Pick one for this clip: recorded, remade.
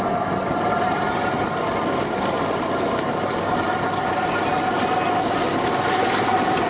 recorded